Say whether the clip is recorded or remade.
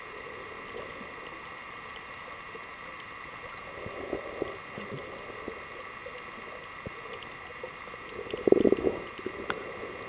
recorded